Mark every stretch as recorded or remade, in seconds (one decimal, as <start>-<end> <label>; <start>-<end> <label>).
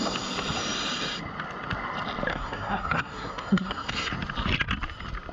0.0-2.3 recorded; 2.3-4.1 remade; 4.1-5.3 recorded